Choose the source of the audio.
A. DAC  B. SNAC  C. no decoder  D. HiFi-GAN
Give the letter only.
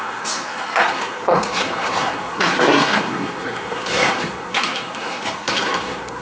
B